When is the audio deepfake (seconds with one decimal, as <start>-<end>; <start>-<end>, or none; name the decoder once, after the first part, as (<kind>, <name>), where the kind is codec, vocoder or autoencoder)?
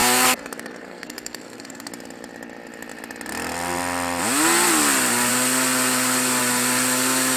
0.0-1.9 (codec, SNAC)